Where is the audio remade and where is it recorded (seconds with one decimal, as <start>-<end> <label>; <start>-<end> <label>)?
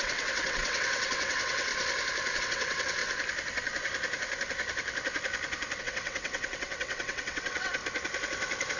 0.0-1.7 remade; 1.7-2.4 recorded; 2.4-3.0 remade; 3.0-5.8 recorded; 5.8-7.8 remade; 7.8-8.8 recorded